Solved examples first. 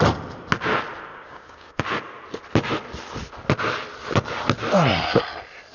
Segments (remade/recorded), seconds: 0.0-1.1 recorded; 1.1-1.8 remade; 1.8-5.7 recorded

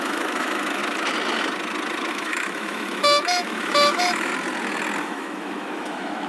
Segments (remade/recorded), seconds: 0.0-0.8 remade; 0.8-2.1 recorded; 2.1-4.3 remade; 4.3-5.0 recorded; 5.0-6.3 remade

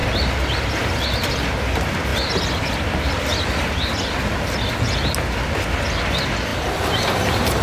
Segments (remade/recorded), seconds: 0.0-6.5 recorded; 6.5-7.6 remade